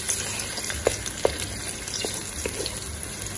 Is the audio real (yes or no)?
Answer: yes